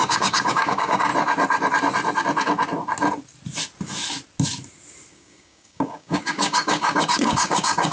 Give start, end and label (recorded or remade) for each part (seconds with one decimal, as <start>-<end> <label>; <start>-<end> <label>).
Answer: 0.0-1.1 remade; 1.1-5.1 recorded; 5.1-7.9 remade